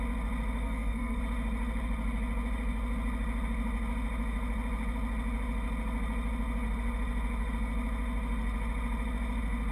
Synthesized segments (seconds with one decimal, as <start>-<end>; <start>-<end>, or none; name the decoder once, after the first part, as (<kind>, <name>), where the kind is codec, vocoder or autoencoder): 0.6-1.2 (codec, SNAC)